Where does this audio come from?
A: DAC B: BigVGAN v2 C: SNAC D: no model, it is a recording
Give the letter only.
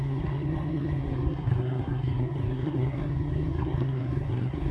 C